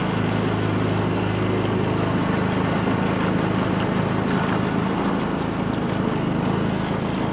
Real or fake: real